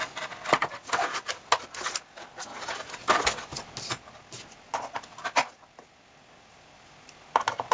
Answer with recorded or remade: recorded